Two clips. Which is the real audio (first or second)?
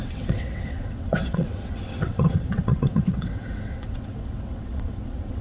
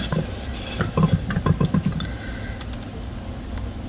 second